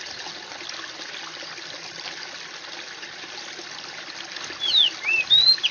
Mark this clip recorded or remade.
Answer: recorded